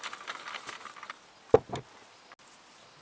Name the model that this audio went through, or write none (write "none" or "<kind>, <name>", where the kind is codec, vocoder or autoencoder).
none